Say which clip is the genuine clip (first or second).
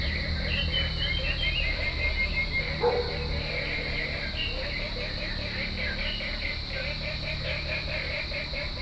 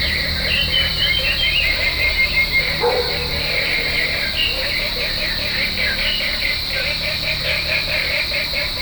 first